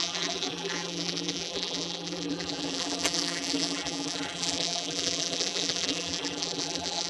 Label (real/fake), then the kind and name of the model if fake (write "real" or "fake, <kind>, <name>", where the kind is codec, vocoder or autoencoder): fake, vocoder, BigVGAN v2